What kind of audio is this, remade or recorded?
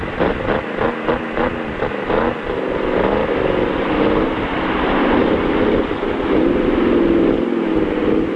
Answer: recorded